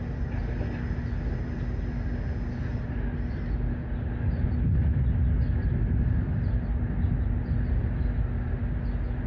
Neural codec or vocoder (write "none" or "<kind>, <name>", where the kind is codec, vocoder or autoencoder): none